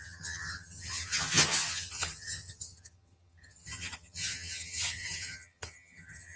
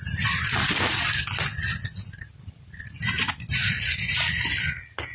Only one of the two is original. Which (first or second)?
second